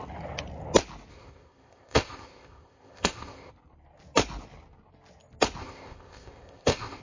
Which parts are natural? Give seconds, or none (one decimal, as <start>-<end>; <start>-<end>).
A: 0.0-1.1; 3.5-5.6